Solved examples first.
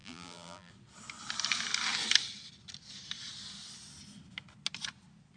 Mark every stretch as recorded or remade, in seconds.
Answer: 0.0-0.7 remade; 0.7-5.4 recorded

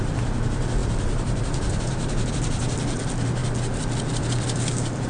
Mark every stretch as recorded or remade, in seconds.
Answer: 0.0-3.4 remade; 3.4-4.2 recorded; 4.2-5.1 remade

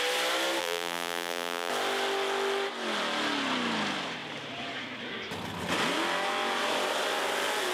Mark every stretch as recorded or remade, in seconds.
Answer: 0.0-0.6 recorded; 0.6-1.7 remade; 1.7-7.7 recorded